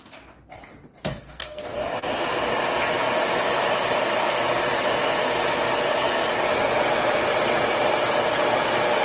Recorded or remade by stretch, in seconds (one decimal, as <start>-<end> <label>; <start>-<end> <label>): 0.0-1.1 recorded; 1.1-1.6 remade; 1.6-9.0 recorded